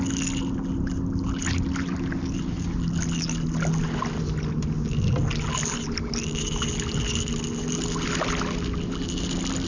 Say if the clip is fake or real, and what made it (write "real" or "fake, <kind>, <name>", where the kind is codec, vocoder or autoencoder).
real